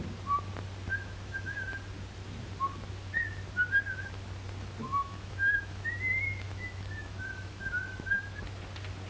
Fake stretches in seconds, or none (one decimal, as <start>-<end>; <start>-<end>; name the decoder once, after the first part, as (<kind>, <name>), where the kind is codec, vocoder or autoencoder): 0.9-1.8 (autoencoder, DAC-VAE); 4.8-8.4